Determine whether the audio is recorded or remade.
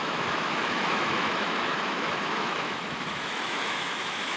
remade